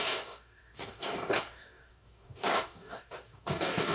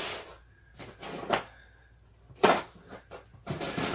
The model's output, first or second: first